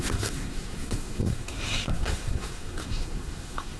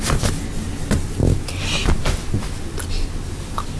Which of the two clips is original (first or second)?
second